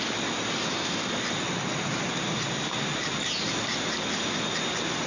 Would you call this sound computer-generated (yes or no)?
no